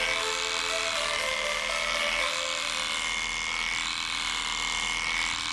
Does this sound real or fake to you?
real